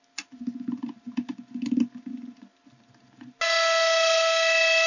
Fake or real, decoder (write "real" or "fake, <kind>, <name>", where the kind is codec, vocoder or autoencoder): real